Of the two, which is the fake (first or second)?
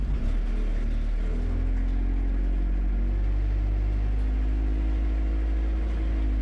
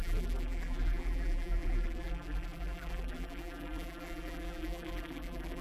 second